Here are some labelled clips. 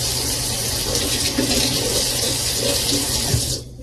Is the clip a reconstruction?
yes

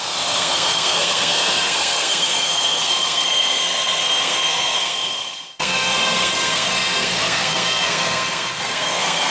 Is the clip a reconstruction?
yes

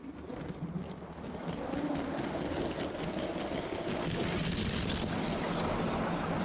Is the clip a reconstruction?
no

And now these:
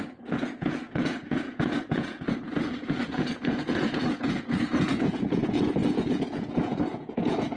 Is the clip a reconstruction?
yes